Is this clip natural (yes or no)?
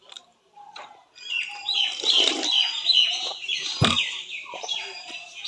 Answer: no